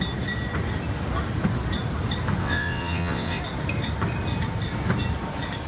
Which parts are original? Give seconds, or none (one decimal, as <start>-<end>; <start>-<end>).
0.0-2.4; 3.4-5.7